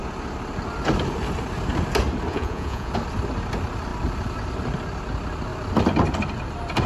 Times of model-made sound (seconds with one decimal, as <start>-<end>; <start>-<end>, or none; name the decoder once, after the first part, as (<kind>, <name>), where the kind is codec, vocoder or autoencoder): 2.3-2.9 (vocoder, Vocos)